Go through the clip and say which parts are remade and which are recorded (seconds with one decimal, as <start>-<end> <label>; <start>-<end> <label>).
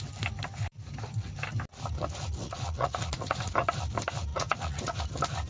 0.0-2.4 recorded; 2.4-3.5 remade; 3.5-4.3 recorded; 4.3-5.0 remade; 5.0-5.5 recorded